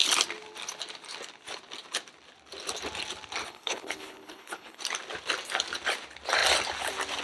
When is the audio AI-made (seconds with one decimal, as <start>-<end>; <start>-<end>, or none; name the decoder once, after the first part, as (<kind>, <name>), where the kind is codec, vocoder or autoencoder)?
3.4-4.8 (codec, HILCodec)